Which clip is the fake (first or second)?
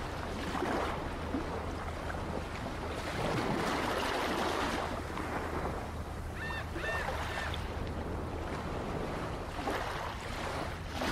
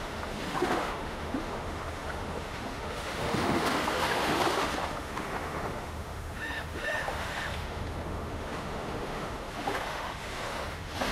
second